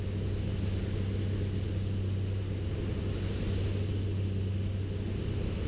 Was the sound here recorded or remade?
recorded